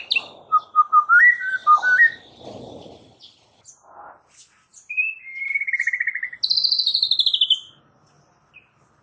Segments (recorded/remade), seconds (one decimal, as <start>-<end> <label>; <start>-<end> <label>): 0.0-9.0 recorded